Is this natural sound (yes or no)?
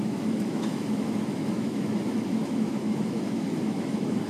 no